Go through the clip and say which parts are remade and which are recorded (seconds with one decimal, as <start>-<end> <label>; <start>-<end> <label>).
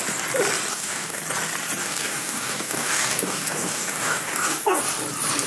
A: 0.0-0.7 recorded; 0.7-1.2 remade; 1.2-1.8 recorded; 1.8-4.8 remade; 4.8-5.5 recorded